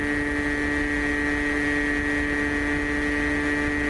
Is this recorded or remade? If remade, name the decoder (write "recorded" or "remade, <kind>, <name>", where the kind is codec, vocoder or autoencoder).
recorded